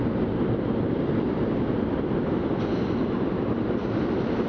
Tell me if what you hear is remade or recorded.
recorded